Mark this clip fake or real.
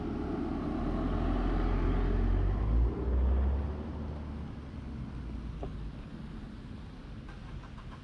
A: real